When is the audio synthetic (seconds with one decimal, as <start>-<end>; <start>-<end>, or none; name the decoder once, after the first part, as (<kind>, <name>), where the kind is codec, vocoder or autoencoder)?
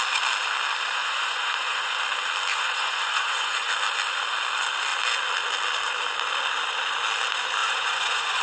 1.0-1.9 (vocoder, Vocos); 2.5-3.7; 7.6-8.4